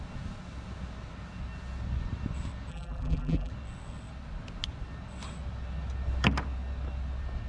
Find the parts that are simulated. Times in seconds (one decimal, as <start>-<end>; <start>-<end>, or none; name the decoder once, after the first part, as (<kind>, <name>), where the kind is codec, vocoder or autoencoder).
2.7-3.5 (vocoder, BigVGAN v2)